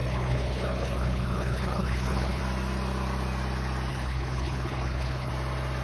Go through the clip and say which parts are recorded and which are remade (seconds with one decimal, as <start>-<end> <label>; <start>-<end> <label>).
0.0-2.4 remade; 2.4-3.9 recorded; 3.9-5.3 remade; 5.3-5.8 recorded